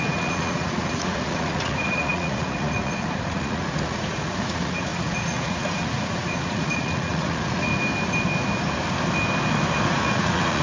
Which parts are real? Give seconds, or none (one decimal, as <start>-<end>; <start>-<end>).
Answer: 7.7-9.9